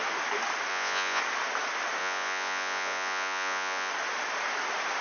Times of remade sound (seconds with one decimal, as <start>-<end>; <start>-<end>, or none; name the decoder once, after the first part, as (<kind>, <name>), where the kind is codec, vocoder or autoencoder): 0.7-1.2 (vocoder, Vocos); 2.0-3.9